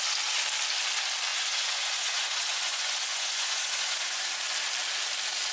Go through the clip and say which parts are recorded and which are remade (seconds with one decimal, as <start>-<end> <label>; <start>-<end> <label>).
0.0-1.3 recorded; 1.3-4.3 remade; 4.3-5.5 recorded

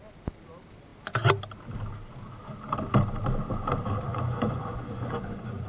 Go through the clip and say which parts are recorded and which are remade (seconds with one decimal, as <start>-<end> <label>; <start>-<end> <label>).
0.0-4.1 recorded; 4.1-5.7 remade